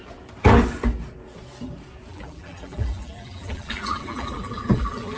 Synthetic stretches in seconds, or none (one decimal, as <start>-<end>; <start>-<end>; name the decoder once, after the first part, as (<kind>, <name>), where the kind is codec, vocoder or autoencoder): 2.1-5.2 (vocoder, BigVGAN v2)